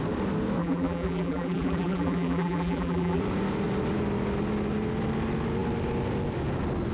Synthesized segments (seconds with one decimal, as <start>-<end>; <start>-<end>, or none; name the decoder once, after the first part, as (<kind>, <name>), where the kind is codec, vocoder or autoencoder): 0.6-3.2 (vocoder, BigVGAN v2)